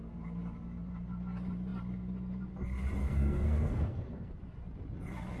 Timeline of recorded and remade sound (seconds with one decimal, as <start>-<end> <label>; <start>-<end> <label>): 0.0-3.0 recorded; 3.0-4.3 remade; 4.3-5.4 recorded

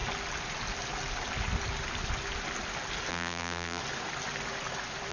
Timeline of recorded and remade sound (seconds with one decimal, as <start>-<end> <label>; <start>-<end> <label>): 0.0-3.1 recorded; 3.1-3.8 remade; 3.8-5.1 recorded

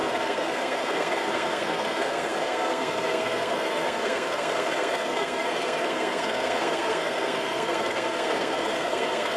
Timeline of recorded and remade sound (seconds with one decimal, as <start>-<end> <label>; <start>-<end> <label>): 0.0-9.4 remade